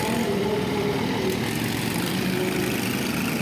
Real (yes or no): yes